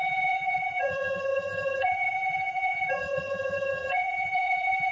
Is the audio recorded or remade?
remade